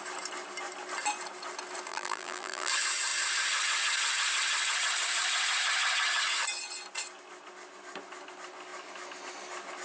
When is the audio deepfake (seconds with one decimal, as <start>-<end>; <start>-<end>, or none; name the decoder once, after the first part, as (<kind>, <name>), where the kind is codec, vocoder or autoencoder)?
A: 1.9-2.7 (vocoder, BigVGAN v2)